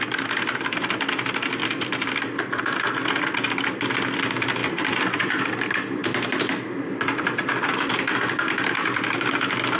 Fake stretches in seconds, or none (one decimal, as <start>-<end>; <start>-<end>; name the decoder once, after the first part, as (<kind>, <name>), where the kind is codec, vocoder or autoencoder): 1.6-2.6 (vocoder, BigVGAN v2); 4.6-5.4